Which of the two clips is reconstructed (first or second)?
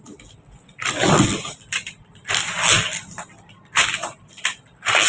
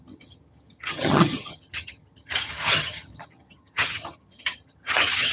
second